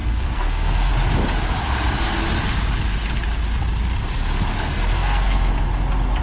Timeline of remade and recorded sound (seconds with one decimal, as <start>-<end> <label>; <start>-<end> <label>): 0.0-0.9 remade; 0.9-4.7 recorded; 4.7-5.5 remade; 5.5-6.2 recorded